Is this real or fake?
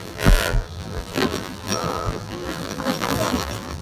fake